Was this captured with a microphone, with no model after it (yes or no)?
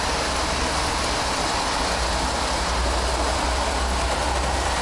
yes